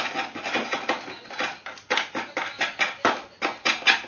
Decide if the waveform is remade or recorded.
recorded